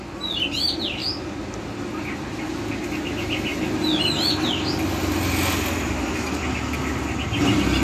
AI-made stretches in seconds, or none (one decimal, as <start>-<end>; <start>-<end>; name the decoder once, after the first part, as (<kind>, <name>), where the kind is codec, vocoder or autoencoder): none